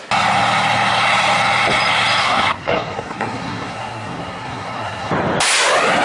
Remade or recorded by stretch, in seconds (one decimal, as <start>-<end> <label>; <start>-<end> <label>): 0.0-2.2 recorded; 2.2-5.1 remade; 5.1-6.0 recorded